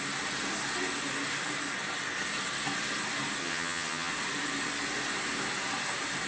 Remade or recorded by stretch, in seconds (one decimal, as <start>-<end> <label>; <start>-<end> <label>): 0.0-3.4 recorded; 3.4-4.1 remade; 4.1-6.3 recorded